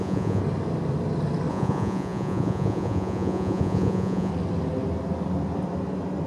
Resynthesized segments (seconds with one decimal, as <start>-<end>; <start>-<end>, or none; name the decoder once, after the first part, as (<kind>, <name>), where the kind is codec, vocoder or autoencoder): 0.0-0.4 (vocoder, Vocos); 1.5-4.3